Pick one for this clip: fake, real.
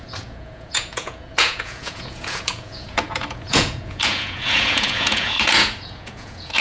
fake